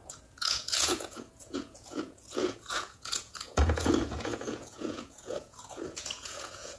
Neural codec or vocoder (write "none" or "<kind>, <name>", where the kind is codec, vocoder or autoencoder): vocoder, Vocos